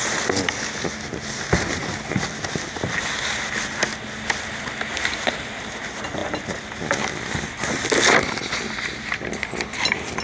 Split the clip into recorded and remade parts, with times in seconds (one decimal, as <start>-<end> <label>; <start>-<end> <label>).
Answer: 0.0-10.2 recorded